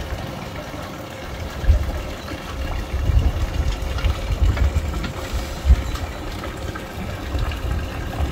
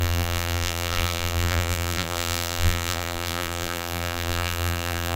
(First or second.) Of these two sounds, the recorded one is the first